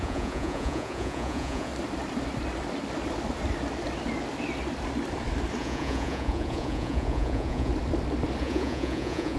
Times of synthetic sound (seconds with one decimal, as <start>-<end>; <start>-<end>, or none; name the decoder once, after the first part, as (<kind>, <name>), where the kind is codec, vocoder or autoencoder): 0.0-1.7 (vocoder, Vocos); 5.6-7.7; 8.4-9.4